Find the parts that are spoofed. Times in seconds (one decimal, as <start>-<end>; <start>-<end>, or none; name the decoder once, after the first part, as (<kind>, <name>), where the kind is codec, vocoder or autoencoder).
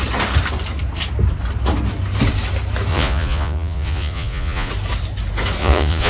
2.9-4.7 (vocoder, Vocos); 5.6-6.1